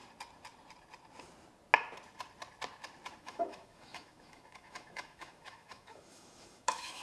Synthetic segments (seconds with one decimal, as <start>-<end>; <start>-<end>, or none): 3.2-7.0